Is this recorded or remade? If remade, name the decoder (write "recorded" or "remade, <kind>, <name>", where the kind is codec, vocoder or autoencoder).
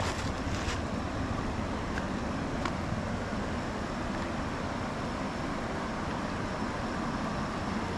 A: recorded